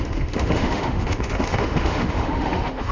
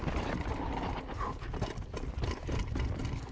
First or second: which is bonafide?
second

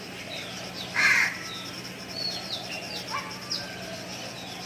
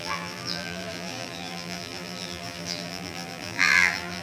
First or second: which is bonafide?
first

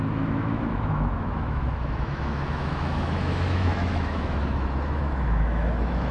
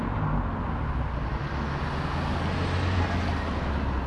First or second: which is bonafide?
second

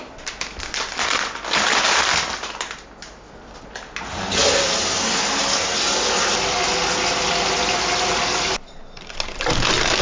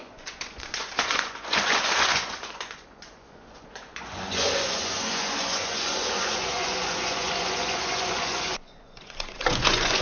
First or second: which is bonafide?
first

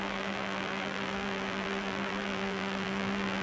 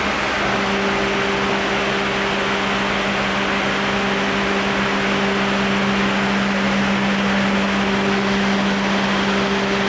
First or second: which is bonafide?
second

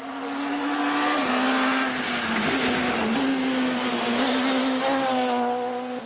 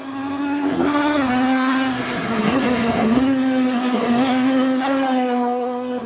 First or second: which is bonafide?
first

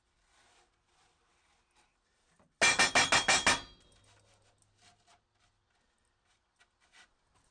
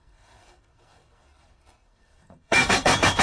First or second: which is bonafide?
first